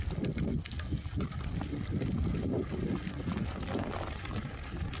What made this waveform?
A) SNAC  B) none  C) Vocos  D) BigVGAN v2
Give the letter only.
B